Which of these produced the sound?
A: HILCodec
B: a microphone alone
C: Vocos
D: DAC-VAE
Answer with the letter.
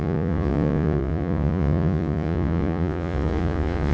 C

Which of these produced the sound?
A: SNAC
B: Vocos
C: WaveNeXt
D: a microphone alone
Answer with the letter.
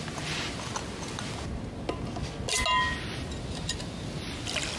D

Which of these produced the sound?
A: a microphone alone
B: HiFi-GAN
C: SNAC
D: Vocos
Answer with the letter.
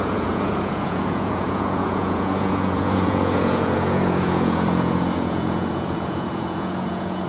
D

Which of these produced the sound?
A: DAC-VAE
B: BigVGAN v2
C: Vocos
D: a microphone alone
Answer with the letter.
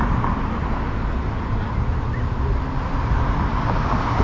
D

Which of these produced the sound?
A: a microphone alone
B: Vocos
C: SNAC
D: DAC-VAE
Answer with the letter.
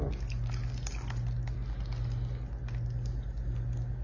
A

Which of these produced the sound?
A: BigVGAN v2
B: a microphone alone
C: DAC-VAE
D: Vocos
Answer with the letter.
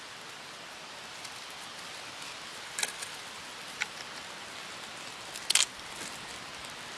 B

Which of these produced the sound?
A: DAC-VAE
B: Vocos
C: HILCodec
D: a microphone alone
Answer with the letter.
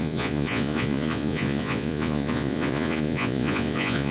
B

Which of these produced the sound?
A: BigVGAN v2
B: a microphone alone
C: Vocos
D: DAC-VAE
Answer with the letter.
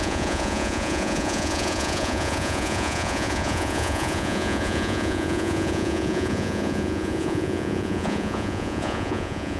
C